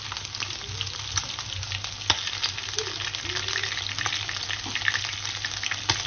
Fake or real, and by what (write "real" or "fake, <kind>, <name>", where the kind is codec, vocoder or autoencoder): real